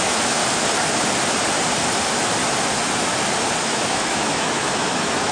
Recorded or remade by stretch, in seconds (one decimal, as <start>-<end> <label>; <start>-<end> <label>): 0.0-0.4 remade; 0.4-3.6 recorded; 3.6-5.3 remade